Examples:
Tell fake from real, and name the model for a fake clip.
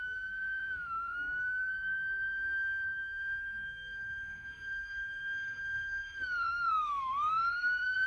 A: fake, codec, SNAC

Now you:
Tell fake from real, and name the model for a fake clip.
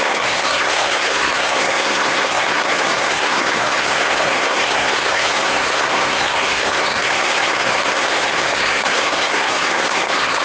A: fake, codec, SNAC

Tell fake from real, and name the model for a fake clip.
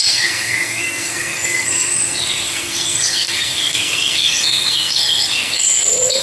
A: fake, codec, SNAC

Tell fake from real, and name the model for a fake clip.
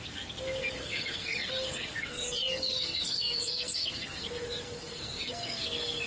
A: fake, codec, SNAC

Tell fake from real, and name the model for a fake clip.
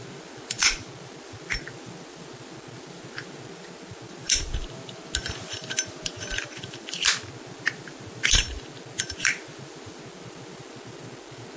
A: real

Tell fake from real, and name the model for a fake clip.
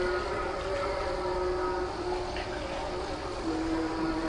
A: real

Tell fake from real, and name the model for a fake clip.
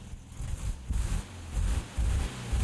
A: real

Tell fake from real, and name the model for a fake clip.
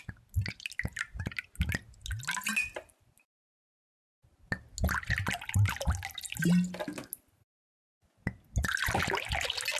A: real